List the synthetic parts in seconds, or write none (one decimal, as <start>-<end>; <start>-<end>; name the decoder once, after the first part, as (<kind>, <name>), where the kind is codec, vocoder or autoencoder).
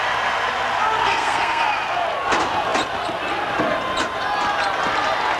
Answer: 1.0-1.6 (codec, SNAC)